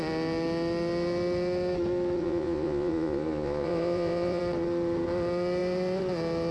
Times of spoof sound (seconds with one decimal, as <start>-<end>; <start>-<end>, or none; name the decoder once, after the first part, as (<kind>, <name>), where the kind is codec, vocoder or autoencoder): 2.2-4.4 (vocoder, Vocos)